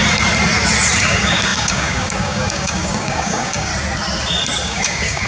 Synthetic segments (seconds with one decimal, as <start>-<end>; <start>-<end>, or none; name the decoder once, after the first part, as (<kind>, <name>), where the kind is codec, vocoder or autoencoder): 1.0-3.7 (codec, DAC); 4.6-5.3